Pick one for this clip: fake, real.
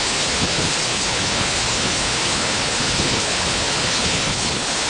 fake